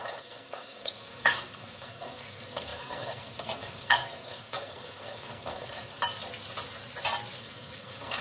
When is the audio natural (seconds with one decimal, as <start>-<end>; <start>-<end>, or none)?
5.9-7.4